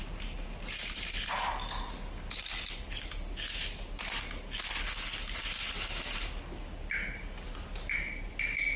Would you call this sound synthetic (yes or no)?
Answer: no